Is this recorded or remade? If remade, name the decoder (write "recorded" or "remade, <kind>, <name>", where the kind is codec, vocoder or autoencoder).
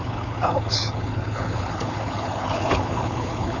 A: remade, codec, HILCodec